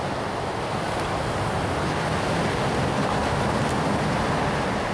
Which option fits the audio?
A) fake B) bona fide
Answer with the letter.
B